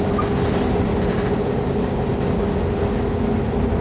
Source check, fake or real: real